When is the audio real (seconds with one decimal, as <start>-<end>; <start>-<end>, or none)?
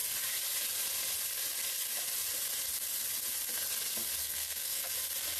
0.0-4.2; 4.9-5.4